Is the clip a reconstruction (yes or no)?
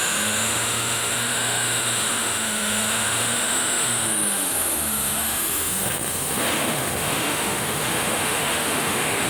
yes